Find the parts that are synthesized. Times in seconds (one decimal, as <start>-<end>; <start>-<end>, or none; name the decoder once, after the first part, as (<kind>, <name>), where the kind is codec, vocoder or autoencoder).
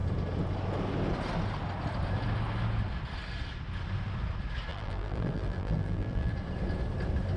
4.7-6.3 (vocoder, BigVGAN v2)